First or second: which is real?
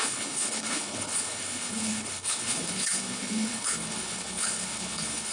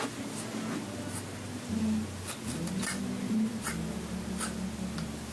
second